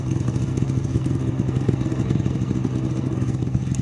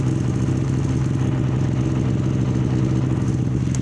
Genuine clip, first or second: second